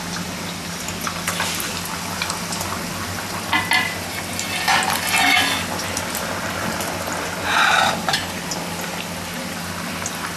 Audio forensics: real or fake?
real